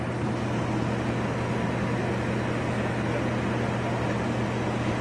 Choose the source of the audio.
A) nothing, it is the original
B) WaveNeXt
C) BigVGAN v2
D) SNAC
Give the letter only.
A